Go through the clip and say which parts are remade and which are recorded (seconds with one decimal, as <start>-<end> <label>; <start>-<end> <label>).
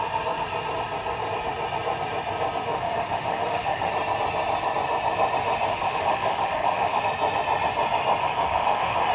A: 0.0-2.7 recorded; 2.7-3.9 remade; 3.9-5.7 recorded; 5.7-7.0 remade; 7.0-8.2 recorded; 8.2-9.1 remade